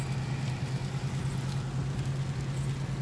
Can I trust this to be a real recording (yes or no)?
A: yes